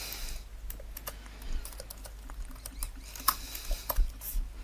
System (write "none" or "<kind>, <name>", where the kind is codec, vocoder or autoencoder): none